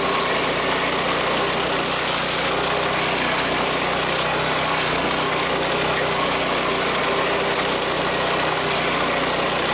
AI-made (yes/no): no